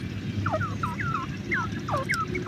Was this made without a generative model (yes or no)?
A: yes